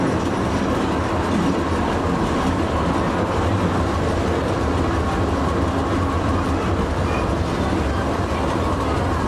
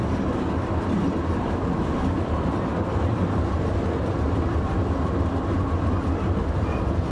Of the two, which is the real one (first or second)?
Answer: first